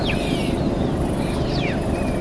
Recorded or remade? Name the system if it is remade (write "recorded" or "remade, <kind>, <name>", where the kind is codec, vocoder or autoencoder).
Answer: recorded